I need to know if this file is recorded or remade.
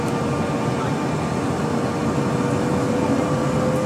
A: recorded